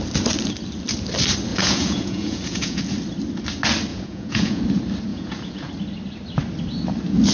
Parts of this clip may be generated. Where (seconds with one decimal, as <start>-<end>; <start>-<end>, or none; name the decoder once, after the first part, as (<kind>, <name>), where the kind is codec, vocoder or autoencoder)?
1.5-2.8 (vocoder, Vocos); 3.9-4.6; 5.1-5.7